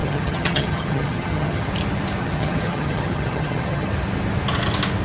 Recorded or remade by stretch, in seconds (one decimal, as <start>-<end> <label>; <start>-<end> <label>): 0.0-1.7 remade; 1.7-2.2 recorded; 2.2-3.9 remade; 3.9-5.0 recorded